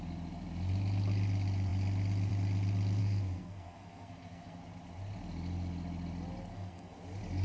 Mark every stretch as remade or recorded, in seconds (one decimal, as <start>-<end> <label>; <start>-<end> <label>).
0.0-3.0 recorded; 3.0-4.6 remade; 4.6-6.5 recorded; 6.5-7.0 remade; 7.0-7.4 recorded